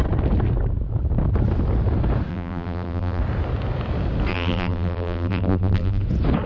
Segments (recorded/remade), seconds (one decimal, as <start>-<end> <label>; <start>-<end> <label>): 0.0-2.3 recorded; 2.3-3.2 remade; 3.2-4.3 recorded; 4.3-6.0 remade; 6.0-6.5 recorded